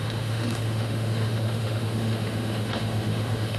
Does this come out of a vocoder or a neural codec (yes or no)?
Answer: yes